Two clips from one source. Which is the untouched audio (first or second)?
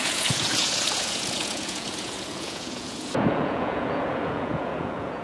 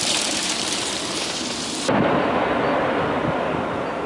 second